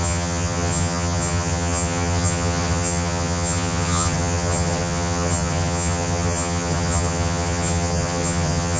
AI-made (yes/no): yes